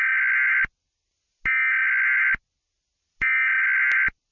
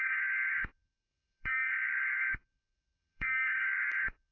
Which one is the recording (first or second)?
first